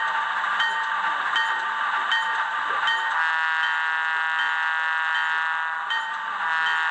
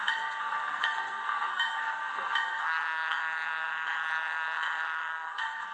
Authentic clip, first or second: first